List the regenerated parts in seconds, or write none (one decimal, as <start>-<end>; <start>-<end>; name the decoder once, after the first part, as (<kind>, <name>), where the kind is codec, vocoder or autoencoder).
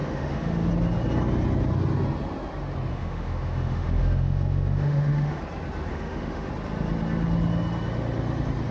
0.0-0.7 (autoencoder, DAC-VAE); 2.9-5.4; 5.9-6.5